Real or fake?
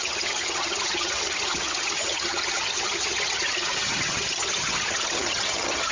fake